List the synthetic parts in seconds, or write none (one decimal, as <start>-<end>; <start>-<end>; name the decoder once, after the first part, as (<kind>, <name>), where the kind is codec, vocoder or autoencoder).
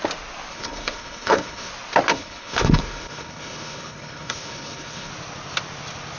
0.5-1.7 (codec, HILCodec); 2.1-5.1